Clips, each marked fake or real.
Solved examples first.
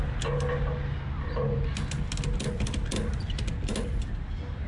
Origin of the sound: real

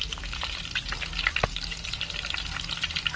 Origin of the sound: real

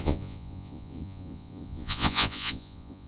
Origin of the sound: fake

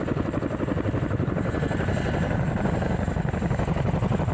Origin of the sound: real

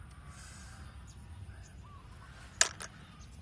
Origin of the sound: real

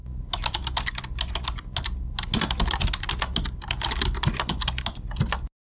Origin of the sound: real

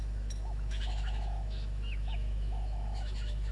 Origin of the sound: fake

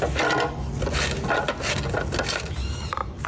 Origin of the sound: real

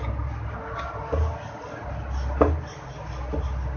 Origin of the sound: real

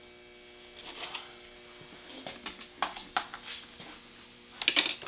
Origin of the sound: real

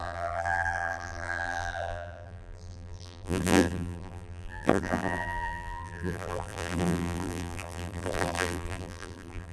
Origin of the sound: fake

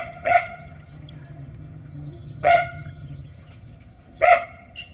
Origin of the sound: fake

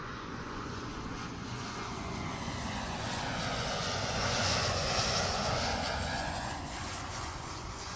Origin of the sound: fake